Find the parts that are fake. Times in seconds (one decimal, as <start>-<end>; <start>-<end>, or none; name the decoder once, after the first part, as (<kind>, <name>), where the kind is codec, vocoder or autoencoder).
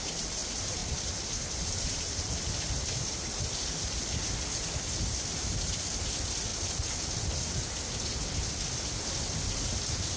0.8-2.3 (vocoder, BigVGAN v2)